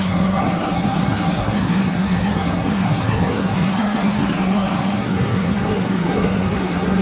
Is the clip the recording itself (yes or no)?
no